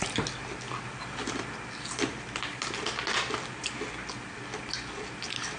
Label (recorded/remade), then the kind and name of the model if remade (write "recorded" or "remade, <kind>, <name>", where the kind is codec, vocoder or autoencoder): recorded